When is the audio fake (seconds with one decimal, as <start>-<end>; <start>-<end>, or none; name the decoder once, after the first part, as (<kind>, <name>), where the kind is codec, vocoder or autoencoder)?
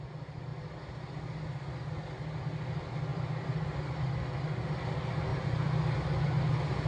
3.1-4.2 (vocoder, BigVGAN v2); 5.3-6.4